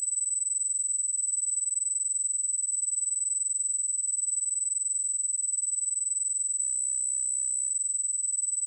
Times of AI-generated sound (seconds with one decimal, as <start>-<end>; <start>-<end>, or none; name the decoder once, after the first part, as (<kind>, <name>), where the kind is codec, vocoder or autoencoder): 0.0-6.6 (vocoder, BigVGAN v2); 7.7-8.7